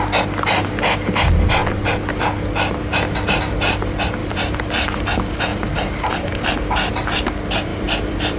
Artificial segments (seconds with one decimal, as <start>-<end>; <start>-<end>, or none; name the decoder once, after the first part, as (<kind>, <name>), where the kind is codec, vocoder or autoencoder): 4.2-5.0 (vocoder, BigVGAN v2); 5.5-6.5; 7.7-8.4